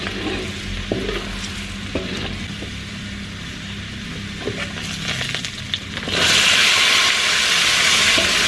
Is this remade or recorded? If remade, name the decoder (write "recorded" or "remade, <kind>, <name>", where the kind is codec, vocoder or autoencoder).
recorded